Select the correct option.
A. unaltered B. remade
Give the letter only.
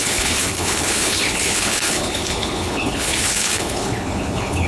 B